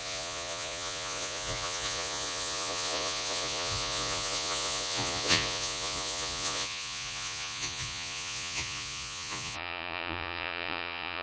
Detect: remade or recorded remade